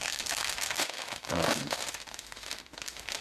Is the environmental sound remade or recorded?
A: remade